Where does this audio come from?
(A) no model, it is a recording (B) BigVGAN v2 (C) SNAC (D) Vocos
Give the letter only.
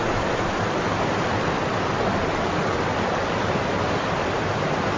A